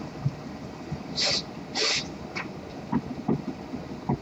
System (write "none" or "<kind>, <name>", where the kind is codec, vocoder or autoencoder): none